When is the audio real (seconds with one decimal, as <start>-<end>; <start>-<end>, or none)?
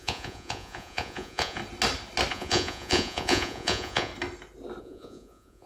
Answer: 1.6-2.3; 4.1-4.8